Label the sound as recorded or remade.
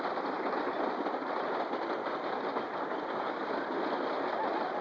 recorded